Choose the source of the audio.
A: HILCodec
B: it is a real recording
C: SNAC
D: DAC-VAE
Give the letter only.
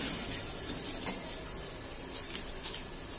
B